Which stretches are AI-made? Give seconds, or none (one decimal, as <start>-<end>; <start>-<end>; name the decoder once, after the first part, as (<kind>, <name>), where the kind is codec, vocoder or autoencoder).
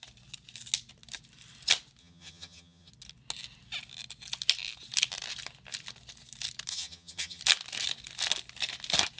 2.0-2.9 (vocoder, HiFi-GAN); 6.7-7.4